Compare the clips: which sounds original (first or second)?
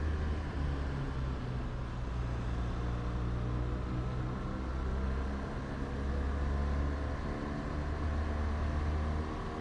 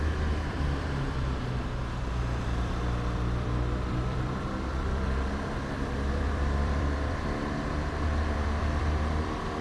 first